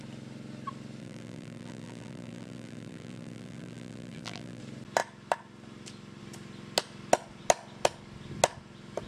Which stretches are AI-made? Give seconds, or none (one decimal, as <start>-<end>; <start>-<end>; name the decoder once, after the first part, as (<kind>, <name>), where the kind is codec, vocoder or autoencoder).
1.0-4.6 (vocoder, BigVGAN v2)